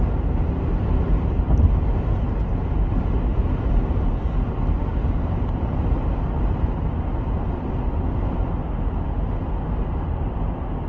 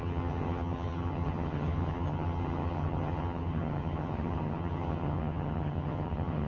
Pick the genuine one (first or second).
first